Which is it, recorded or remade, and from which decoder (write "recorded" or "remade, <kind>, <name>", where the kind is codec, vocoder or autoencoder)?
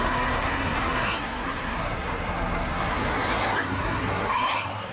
remade, codec, SNAC